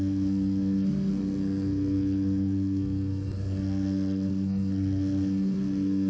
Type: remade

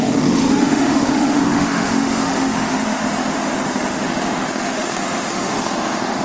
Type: remade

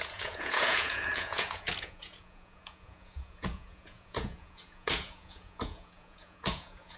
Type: remade